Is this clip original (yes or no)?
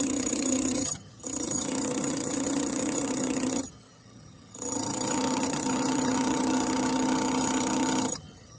no